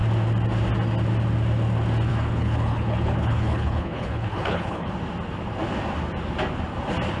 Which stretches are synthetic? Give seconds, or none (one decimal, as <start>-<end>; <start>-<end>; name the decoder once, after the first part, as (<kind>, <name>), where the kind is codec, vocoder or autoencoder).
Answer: 2.1-4.9 (codec, HILCodec)